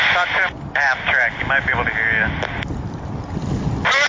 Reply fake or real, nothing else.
real